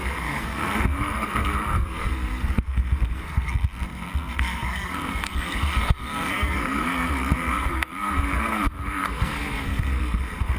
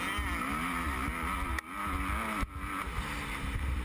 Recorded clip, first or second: second